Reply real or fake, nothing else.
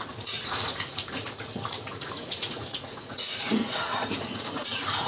fake